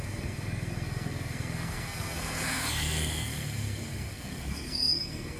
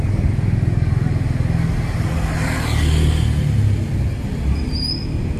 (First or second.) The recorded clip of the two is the second